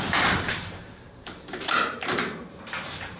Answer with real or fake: fake